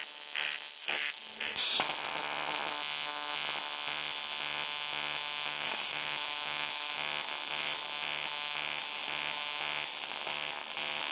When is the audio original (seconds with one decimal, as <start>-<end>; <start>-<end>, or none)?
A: 0.0-0.8; 1.7-5.5; 6.9-11.1